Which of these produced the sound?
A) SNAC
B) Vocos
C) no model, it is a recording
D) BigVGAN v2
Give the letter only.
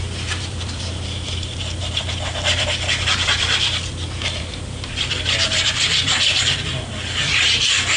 D